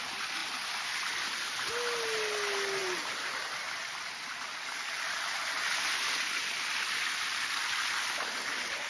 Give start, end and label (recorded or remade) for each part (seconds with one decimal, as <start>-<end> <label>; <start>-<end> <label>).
0.0-8.9 recorded